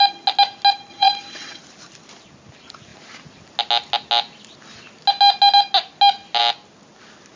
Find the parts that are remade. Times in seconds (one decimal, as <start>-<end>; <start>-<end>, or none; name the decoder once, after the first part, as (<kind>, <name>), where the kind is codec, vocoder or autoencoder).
0.9-1.6 (vocoder, WaveNeXt)